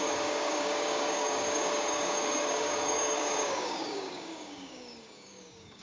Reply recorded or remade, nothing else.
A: remade